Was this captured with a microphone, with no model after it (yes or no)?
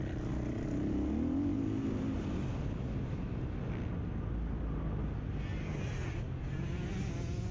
yes